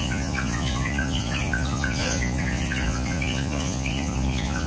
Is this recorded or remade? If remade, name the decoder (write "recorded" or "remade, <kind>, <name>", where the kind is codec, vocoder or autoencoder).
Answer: remade, vocoder, Vocos